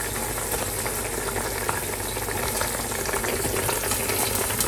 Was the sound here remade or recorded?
recorded